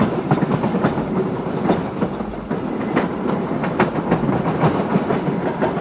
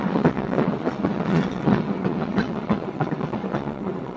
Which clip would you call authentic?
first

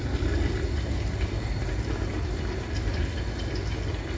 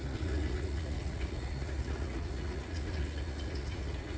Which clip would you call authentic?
first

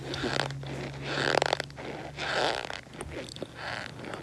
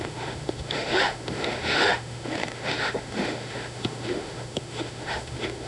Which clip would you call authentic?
first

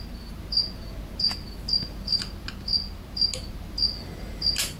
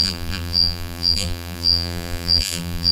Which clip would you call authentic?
first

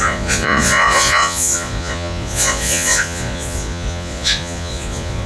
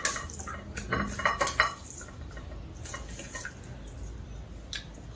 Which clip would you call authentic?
second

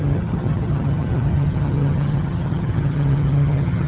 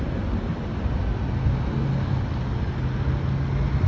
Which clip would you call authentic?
second